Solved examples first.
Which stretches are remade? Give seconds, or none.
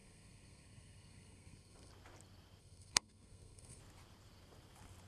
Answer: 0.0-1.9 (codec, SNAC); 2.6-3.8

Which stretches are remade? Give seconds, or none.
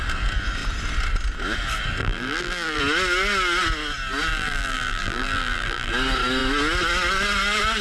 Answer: 2.0-2.8 (vocoder, BigVGAN v2); 4.3-5.9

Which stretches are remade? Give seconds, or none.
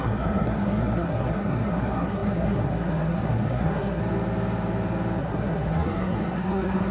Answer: 0.0-4.0 (codec, SNAC); 5.2-6.9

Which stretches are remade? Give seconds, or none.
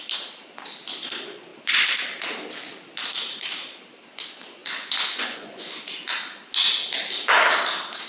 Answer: 4.6-5.7 (vocoder, Vocos)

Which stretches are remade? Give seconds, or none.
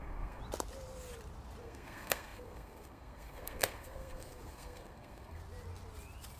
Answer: 0.0-0.4 (codec, SNAC); 1.6-5.4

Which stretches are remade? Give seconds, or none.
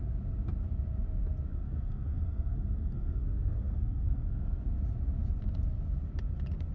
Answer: 1.5-4.6 (codec, SNAC)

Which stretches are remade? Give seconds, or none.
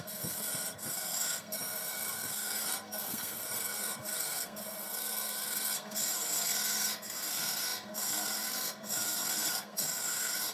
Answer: 0.0-10.5 (codec, SNAC)